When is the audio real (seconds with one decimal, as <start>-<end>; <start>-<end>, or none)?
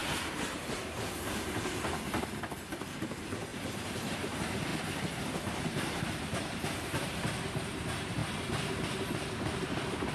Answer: 4.7-6.0; 8.2-10.1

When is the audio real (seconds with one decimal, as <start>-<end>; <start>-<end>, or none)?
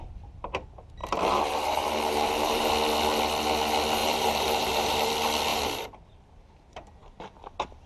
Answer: 0.0-1.0; 2.7-4.0; 5.1-5.5; 6.3-7.9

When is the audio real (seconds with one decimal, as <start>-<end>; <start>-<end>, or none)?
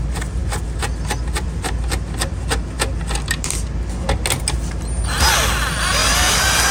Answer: 0.0-6.0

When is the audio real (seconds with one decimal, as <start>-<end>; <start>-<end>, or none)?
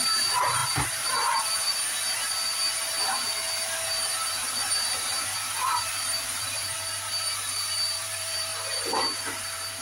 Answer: 0.6-4.3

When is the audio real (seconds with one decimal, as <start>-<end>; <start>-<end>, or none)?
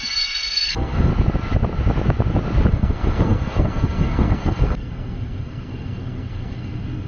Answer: 1.1-2.7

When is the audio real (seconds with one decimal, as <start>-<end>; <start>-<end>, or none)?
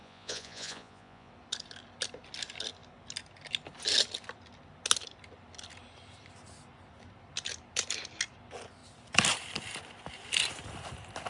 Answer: 1.3-11.3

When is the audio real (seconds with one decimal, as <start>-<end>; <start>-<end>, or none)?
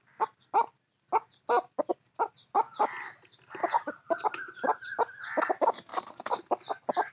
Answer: 0.0-1.9; 2.5-5.9